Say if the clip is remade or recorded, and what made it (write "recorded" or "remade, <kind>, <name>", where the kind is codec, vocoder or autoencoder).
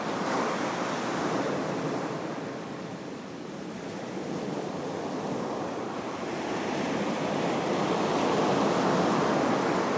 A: remade, vocoder, BigVGAN v2